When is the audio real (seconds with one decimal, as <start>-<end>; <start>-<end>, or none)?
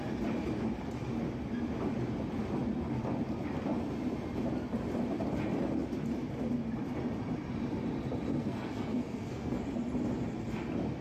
0.0-8.3; 9.6-11.0